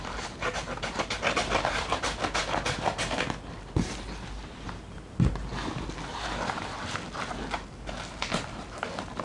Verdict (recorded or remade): recorded